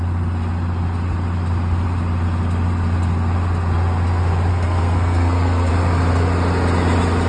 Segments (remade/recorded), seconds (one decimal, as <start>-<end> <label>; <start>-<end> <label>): 0.0-4.5 recorded; 4.5-5.7 remade; 5.7-7.3 recorded